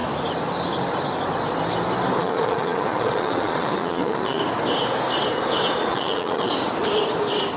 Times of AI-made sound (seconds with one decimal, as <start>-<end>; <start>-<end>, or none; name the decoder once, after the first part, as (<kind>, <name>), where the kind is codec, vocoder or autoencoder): 2.2-4.4 (vocoder, Vocos); 5.9-6.5